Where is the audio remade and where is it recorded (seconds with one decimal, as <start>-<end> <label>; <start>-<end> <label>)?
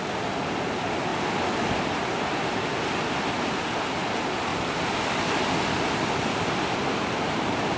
0.0-7.8 recorded